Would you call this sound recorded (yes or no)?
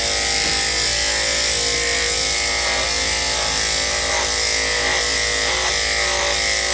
yes